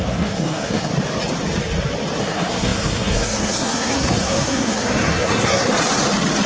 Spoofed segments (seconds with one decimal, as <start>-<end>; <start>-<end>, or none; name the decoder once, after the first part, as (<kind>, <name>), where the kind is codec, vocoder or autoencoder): 0.0-0.9 (codec, SNAC); 2.2-5.7